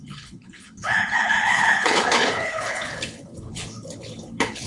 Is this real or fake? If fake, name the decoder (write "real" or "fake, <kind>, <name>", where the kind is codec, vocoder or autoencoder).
fake, codec, HILCodec